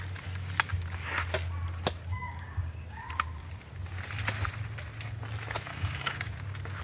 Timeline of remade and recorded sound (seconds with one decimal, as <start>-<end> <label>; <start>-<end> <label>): 0.0-2.1 recorded; 2.1-3.0 remade; 3.0-5.7 recorded; 5.7-6.3 remade; 6.3-6.8 recorded